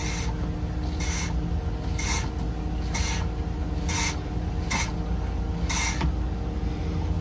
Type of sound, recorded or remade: recorded